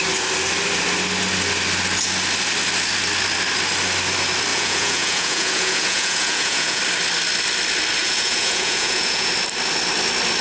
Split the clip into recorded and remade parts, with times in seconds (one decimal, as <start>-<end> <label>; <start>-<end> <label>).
0.0-4.5 recorded; 4.5-6.8 remade; 6.8-8.0 recorded; 8.0-9.3 remade; 9.3-10.4 recorded